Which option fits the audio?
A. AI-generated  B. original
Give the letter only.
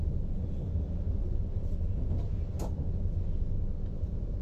B